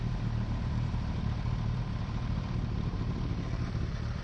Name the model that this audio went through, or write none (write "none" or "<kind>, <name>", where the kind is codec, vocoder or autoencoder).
vocoder, BigVGAN v2